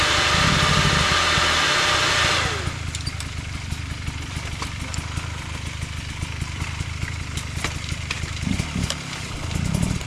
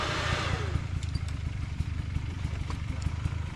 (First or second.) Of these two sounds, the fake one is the second